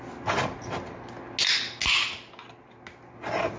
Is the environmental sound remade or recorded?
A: recorded